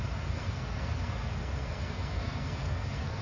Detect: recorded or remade remade